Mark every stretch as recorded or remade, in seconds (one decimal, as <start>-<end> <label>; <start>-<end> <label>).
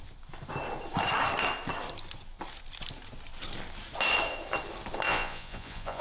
0.0-5.1 recorded; 5.1-6.0 remade